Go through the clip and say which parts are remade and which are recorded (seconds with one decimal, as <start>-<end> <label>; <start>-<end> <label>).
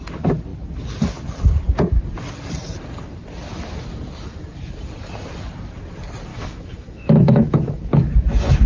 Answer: 0.0-6.3 recorded; 6.3-8.1 remade; 8.1-8.7 recorded